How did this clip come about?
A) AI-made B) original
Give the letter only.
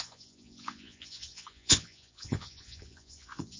A